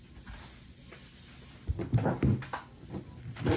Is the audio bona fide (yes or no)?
yes